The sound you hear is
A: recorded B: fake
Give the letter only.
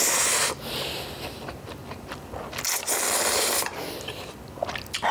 A